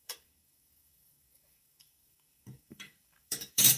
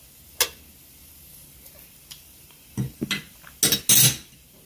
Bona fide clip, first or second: second